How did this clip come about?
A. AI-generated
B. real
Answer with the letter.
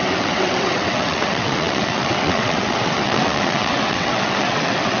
A